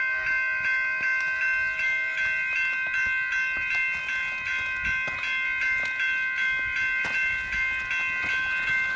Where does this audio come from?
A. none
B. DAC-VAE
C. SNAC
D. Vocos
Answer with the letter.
A